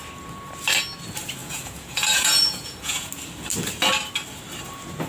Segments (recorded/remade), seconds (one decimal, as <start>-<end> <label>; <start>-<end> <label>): 0.0-1.4 recorded; 1.4-3.1 remade; 3.1-5.1 recorded

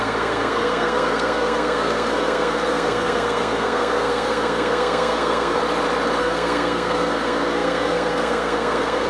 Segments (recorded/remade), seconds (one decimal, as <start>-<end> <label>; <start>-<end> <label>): 0.0-5.6 remade; 5.6-6.2 recorded; 6.2-9.1 remade

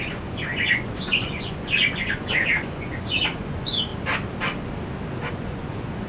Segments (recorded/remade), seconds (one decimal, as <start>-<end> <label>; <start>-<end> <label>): 0.0-3.9 remade; 3.9-5.3 recorded; 5.3-6.1 remade

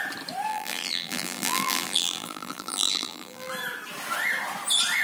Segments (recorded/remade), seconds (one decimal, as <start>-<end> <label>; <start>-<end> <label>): 0.0-0.5 recorded; 0.5-3.5 remade; 3.5-5.0 recorded

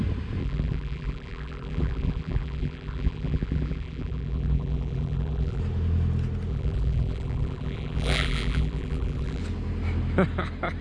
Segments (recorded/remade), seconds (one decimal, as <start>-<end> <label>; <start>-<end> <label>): 0.0-0.4 recorded; 0.4-5.6 remade; 5.6-6.5 recorded; 6.5-9.4 remade; 9.4-10.8 recorded

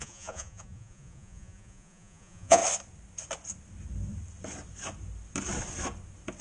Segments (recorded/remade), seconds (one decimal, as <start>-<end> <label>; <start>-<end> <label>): 0.0-2.6 remade; 2.6-6.4 recorded